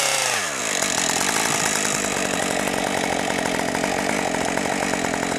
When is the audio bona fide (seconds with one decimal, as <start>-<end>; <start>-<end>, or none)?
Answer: 0.0-5.4